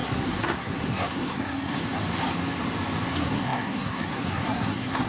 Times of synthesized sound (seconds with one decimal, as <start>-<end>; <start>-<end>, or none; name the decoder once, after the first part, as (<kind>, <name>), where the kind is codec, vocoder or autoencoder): 0.0-1.8 (codec, SNAC); 3.1-5.1